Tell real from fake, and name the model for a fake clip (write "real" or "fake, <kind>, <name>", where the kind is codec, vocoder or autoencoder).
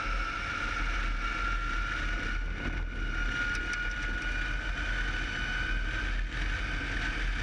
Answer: real